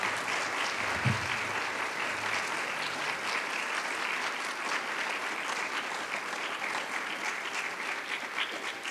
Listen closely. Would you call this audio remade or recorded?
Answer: recorded